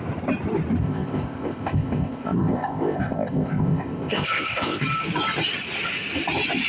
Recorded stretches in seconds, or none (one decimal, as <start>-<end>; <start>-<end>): 0.0-0.8; 4.8-6.7